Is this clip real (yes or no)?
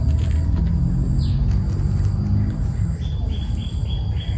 yes